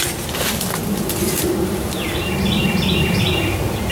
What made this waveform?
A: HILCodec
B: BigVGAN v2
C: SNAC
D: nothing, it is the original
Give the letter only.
D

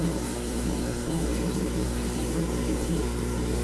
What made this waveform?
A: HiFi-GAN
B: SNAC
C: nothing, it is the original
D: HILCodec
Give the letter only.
B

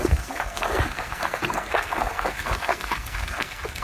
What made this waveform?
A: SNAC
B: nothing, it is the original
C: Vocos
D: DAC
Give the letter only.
A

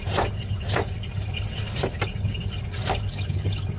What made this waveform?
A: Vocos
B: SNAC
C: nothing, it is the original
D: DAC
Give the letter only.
C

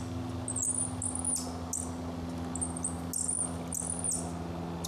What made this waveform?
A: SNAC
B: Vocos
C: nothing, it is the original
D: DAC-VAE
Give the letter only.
C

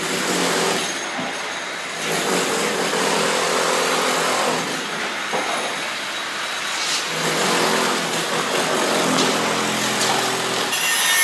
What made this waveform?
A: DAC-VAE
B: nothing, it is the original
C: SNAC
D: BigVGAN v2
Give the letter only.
B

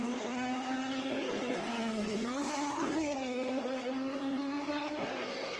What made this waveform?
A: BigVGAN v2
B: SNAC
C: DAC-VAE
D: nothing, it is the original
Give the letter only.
B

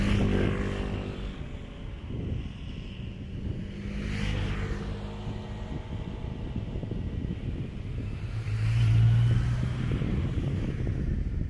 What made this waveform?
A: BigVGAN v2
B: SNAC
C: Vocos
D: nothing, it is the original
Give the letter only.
D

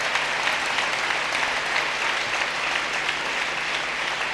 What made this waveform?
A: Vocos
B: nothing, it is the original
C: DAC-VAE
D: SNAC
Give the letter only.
B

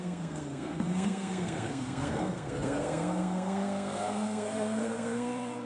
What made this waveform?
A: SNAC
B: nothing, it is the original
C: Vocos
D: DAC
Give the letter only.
A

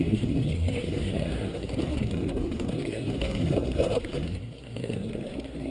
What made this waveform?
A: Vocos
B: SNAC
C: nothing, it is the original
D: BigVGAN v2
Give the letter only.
B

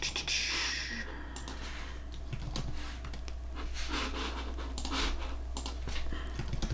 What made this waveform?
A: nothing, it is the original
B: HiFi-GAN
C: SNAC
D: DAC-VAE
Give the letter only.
A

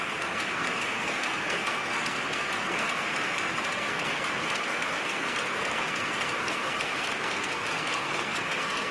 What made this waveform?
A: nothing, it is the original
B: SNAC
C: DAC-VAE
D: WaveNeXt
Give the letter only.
B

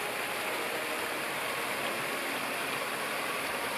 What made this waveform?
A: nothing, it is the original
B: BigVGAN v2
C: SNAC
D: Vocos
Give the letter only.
A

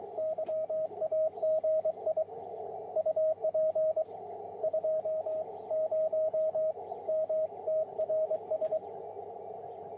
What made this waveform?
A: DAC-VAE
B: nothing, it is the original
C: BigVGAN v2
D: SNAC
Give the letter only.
B